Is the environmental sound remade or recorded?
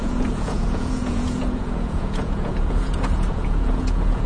remade